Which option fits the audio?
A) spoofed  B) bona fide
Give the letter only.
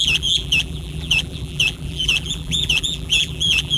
A